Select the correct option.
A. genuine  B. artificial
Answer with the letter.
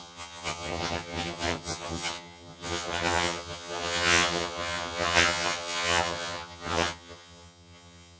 B